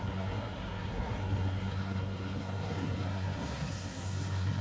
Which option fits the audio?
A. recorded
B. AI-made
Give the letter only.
B